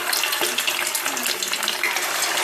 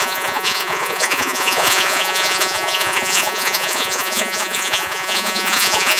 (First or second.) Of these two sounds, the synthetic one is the second